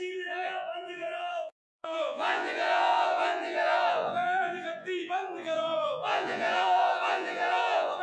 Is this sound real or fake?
fake